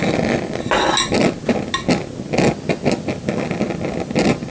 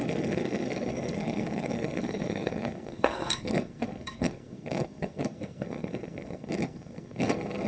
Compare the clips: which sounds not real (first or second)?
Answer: second